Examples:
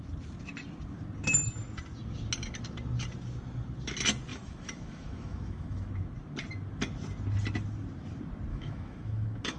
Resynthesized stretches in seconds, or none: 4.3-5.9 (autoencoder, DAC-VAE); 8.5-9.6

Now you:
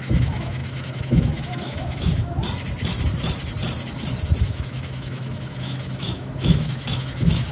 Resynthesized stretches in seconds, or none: 0.0-2.4 (autoencoder, DAC-VAE); 4.4-7.5

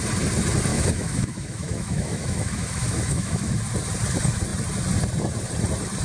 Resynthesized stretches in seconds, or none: 0.7-3.6 (autoencoder, DAC-VAE)

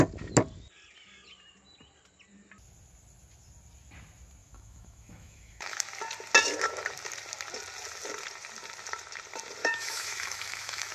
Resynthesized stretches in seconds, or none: 4.4-5.9 (autoencoder, DAC-VAE); 9.6-10.9

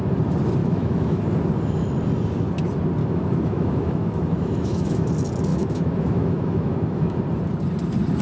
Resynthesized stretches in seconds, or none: 0.6-1.2 (autoencoder, DAC-VAE); 3.0-5.1; 5.5-7.2